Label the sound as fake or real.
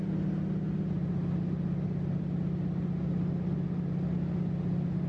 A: real